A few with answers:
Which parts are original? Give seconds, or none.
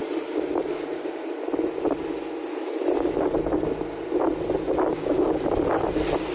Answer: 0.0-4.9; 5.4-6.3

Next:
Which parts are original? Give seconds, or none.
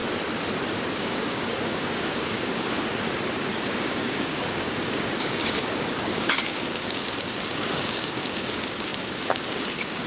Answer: 0.0-0.9; 2.9-3.5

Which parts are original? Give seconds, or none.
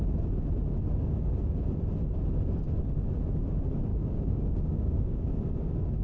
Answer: 0.0-3.9; 5.3-6.0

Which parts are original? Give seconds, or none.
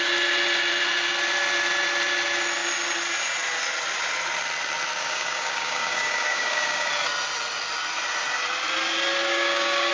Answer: 0.0-5.0; 6.9-9.3